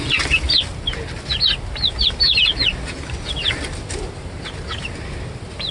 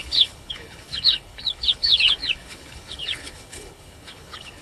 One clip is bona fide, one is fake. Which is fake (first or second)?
second